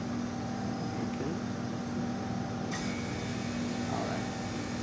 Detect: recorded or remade recorded